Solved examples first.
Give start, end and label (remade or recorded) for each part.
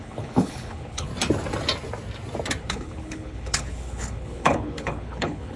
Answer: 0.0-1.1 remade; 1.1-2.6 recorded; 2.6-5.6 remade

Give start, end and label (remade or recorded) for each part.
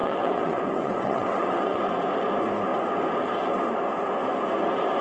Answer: 0.0-1.8 remade; 1.8-5.0 recorded